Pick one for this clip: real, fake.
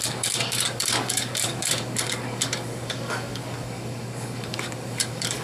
fake